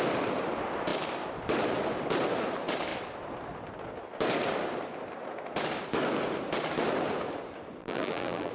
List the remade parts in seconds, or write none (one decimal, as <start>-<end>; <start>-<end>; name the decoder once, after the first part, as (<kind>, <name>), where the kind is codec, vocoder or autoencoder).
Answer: 7.8-8.5 (vocoder, BigVGAN v2)